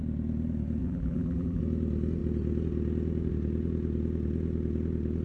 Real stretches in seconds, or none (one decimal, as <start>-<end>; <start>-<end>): 0.0-0.8; 1.6-5.2